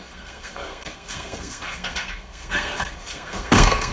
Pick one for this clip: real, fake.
fake